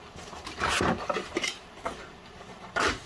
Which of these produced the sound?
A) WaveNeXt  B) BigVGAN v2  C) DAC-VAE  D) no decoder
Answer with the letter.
B